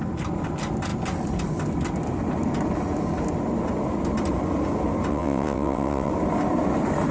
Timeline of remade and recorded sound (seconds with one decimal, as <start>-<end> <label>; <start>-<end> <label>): 0.0-5.1 recorded; 5.1-6.1 remade; 6.1-7.1 recorded